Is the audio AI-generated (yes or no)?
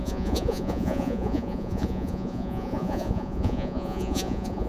yes